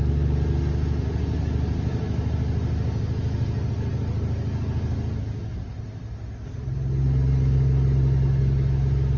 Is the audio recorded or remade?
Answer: recorded